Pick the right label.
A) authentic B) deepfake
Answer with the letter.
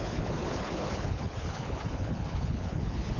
B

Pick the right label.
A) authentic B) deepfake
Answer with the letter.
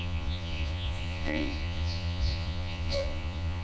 B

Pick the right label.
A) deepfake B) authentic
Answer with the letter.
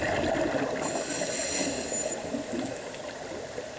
B